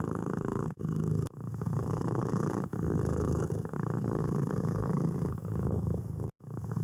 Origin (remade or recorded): remade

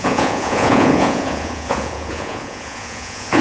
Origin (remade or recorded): remade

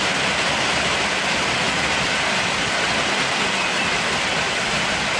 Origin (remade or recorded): recorded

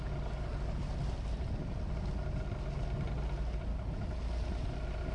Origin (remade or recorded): recorded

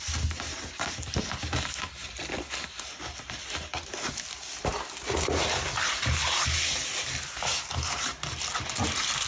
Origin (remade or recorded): recorded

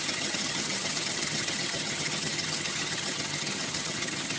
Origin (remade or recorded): remade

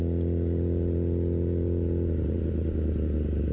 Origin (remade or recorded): recorded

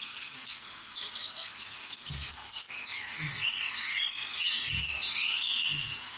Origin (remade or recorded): remade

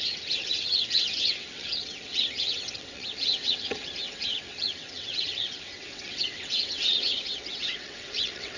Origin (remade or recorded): remade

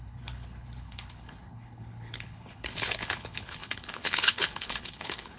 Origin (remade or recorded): remade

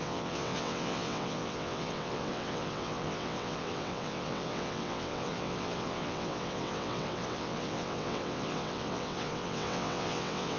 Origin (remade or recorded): remade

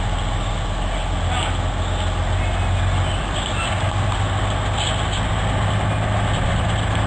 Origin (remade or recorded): recorded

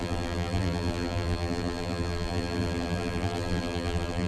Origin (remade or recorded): remade